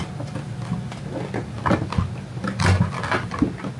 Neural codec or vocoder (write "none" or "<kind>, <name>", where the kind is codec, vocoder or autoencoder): none